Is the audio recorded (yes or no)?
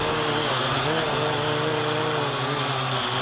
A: yes